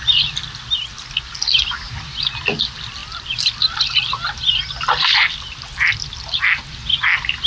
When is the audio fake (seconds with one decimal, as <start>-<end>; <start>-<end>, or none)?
none